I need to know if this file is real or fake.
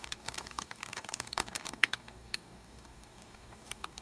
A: fake